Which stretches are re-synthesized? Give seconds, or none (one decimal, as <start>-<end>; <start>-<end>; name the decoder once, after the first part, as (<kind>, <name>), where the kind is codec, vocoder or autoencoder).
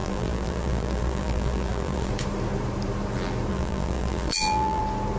0.0-2.1 (vocoder, BigVGAN v2); 3.5-4.8